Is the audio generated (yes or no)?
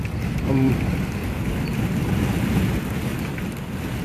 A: no